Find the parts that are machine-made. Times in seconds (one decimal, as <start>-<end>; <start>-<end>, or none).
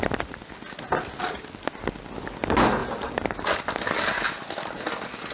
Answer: none